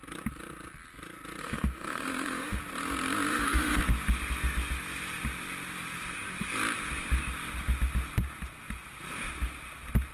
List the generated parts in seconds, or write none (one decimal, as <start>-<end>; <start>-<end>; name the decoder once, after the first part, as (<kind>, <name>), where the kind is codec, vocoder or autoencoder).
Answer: 1.4-2.6 (autoencoder, DAC-VAE); 3.3-3.8